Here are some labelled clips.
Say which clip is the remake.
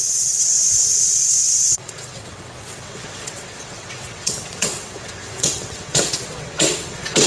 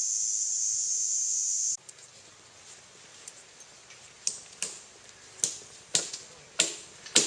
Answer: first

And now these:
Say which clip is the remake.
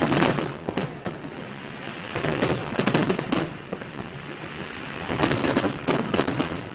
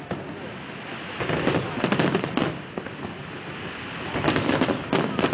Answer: first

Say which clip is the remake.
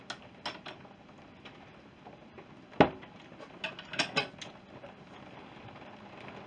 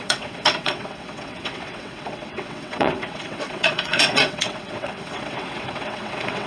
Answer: second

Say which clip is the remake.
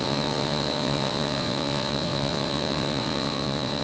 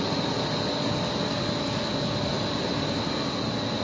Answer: first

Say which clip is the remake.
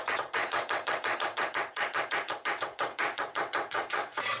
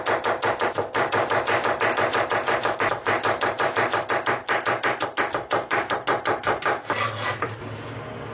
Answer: first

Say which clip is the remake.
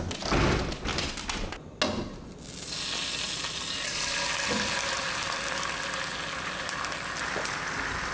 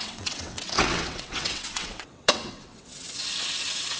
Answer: second